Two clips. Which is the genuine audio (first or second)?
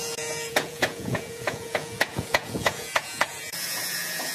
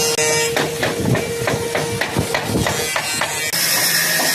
second